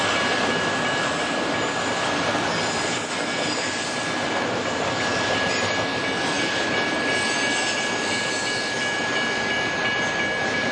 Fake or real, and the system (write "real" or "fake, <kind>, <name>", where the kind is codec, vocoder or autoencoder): real